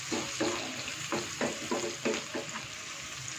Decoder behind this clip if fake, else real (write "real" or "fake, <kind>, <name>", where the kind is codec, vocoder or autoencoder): real